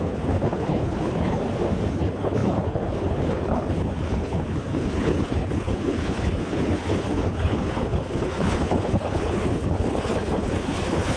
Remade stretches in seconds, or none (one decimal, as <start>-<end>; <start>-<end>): 0.0-1.4; 1.9-11.2